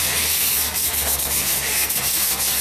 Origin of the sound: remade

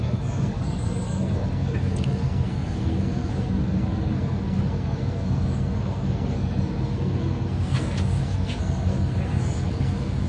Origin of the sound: remade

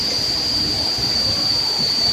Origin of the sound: recorded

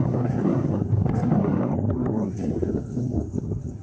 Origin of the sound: remade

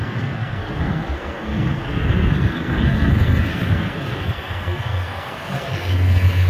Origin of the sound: remade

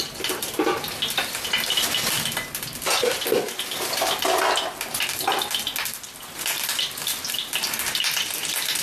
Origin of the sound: recorded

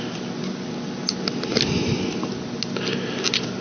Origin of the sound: recorded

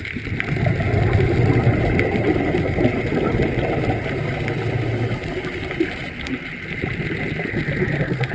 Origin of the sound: recorded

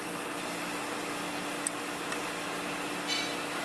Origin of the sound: recorded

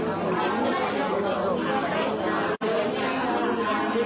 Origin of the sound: recorded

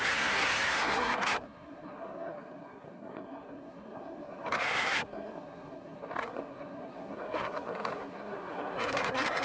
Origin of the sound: remade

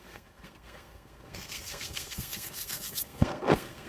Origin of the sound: remade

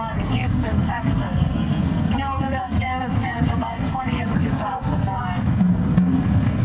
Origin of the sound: remade